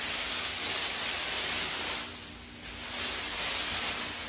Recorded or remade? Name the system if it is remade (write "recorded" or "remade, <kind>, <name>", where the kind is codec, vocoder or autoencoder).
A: recorded